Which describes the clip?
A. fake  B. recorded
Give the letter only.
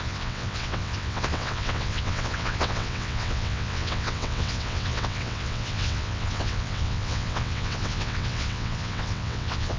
A